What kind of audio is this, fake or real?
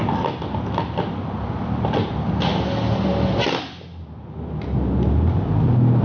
real